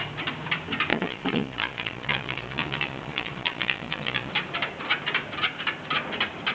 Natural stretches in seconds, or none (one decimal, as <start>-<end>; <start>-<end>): 0.0-0.9; 4.3-6.5